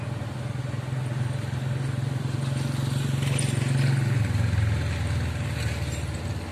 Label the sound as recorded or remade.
recorded